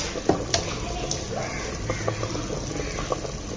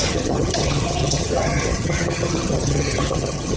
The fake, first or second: second